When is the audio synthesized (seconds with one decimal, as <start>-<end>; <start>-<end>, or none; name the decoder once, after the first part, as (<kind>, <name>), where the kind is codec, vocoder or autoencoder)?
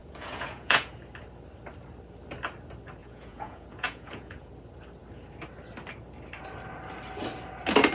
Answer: 0.0-0.9 (vocoder, Vocos); 3.0-4.5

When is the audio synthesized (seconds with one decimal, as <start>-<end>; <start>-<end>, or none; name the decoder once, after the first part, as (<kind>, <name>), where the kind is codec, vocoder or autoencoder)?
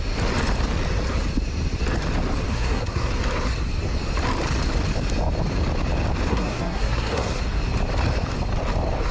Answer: 2.5-3.1 (codec, SNAC); 6.3-7.4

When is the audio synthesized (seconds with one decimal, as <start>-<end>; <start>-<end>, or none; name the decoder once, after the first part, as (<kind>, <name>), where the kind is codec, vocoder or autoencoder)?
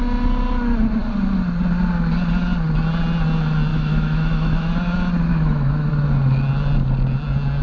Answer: 3.7-4.7 (autoencoder, DAC-VAE); 5.3-5.9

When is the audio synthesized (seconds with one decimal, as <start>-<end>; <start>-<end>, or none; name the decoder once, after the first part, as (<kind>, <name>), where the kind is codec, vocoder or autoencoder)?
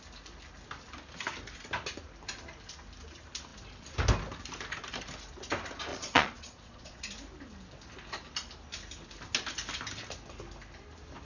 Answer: 5.9-7.0 (vocoder, Vocos)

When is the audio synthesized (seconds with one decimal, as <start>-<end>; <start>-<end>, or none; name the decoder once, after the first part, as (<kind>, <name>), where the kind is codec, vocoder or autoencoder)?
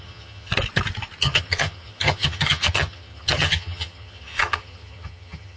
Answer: 0.0-0.5 (vocoder, HiFi-GAN); 1.2-5.6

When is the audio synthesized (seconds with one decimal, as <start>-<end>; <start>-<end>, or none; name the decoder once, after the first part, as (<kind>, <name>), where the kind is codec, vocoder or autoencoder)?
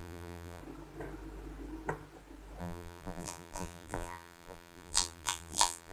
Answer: 0.0-0.6 (vocoder, BigVGAN v2); 2.6-5.9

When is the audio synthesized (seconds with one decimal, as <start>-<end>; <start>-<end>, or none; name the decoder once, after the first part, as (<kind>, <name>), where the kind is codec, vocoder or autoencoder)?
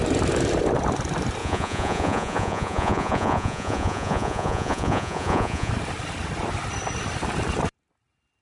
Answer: 1.4-5.7 (vocoder, Vocos)